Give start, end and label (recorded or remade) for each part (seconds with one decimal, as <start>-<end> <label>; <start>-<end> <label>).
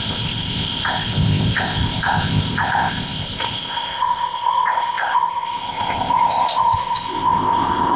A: 0.0-8.0 remade